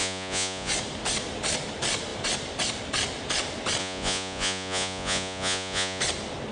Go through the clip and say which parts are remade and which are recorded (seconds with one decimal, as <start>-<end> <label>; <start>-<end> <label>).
0.0-0.7 remade; 0.7-3.8 recorded; 3.8-6.0 remade; 6.0-6.5 recorded